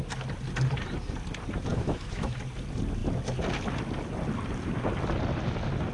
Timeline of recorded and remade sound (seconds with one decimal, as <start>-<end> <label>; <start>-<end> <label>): 0.0-1.7 recorded; 1.7-2.4 remade; 2.4-5.9 recorded

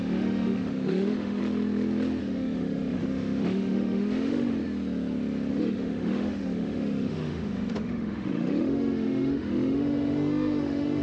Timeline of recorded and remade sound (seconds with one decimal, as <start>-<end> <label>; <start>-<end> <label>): 0.0-1.4 remade; 1.4-2.2 recorded; 2.2-4.6 remade; 4.6-5.5 recorded; 5.5-11.0 remade

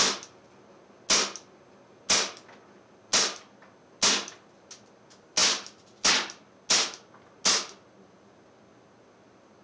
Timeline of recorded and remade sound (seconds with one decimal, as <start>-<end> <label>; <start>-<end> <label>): 0.0-9.6 recorded